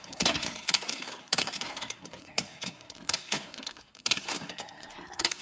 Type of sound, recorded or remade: remade